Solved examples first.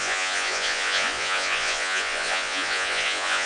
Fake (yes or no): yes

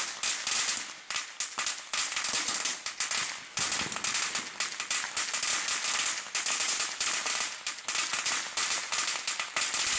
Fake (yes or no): no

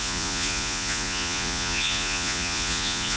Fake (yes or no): yes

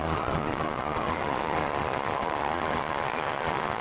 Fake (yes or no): yes